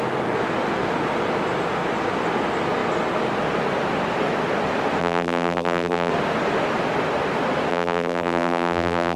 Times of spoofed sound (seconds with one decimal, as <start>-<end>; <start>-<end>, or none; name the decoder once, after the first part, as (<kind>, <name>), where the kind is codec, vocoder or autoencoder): 5.0-6.1 (vocoder, BigVGAN v2); 7.7-9.2